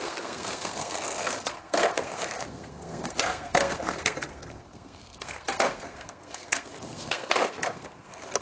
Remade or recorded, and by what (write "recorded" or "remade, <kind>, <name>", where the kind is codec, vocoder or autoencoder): remade, codec, SNAC